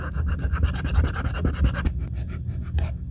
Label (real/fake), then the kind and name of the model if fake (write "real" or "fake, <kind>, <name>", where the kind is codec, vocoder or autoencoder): real